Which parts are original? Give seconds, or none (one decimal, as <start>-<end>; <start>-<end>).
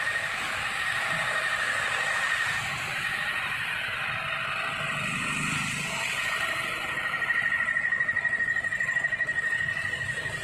3.9-7.3